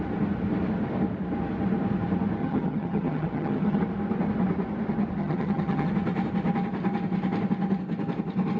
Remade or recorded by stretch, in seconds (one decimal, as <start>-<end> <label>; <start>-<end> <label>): 0.0-2.4 recorded; 2.4-3.8 remade; 3.8-5.2 recorded; 5.2-5.9 remade; 5.9-8.6 recorded